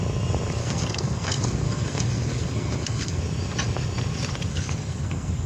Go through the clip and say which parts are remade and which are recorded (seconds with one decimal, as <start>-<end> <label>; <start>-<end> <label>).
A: 0.0-0.6 recorded; 0.6-3.2 remade; 3.2-4.5 recorded; 4.5-5.5 remade

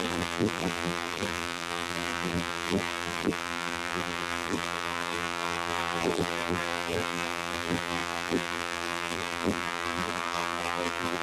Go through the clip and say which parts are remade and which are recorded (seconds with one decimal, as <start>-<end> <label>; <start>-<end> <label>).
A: 0.0-11.2 remade

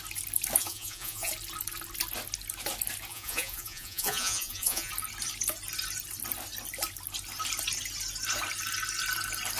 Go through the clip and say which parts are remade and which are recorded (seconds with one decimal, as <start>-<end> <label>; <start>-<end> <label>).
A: 0.0-0.6 recorded; 0.6-1.3 remade; 1.3-3.1 recorded; 3.1-4.9 remade; 4.9-9.6 recorded

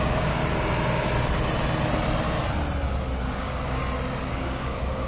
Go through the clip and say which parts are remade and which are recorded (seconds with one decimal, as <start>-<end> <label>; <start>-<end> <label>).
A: 0.0-0.4 remade; 0.4-3.2 recorded; 3.2-3.8 remade; 3.8-4.3 recorded; 4.3-5.1 remade

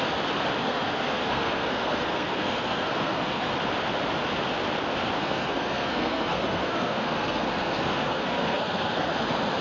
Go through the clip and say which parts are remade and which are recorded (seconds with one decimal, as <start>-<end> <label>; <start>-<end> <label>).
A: 0.0-0.6 recorded; 0.6-3.5 remade; 3.5-5.2 recorded; 5.2-9.1 remade; 9.1-9.6 recorded

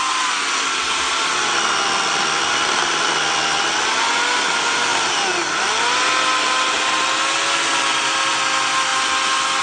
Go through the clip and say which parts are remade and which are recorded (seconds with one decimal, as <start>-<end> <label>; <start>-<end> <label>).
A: 0.0-9.6 recorded

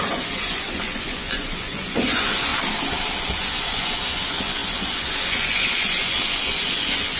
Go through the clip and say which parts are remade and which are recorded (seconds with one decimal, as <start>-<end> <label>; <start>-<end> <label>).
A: 0.0-2.5 remade; 2.5-3.2 recorded; 3.2-7.2 remade

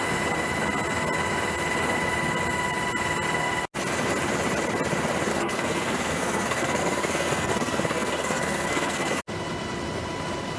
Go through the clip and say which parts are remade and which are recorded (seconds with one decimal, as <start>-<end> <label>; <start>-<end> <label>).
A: 0.0-5.3 recorded; 5.3-9.2 remade; 9.2-10.6 recorded